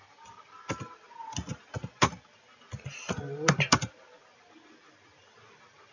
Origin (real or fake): real